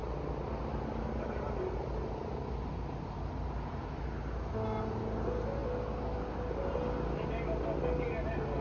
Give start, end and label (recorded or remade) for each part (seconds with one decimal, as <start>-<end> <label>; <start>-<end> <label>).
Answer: 0.0-8.6 recorded